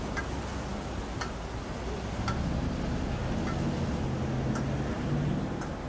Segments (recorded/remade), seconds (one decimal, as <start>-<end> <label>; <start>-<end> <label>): 0.0-5.9 recorded